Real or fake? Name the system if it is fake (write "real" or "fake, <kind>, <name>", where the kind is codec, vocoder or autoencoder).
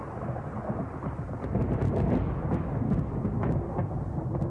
real